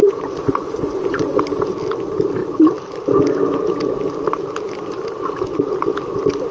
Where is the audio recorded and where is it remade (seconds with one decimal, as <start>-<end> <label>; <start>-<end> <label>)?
0.0-1.4 remade; 1.4-6.5 recorded